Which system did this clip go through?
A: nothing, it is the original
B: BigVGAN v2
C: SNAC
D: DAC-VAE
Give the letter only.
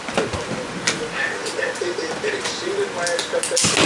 A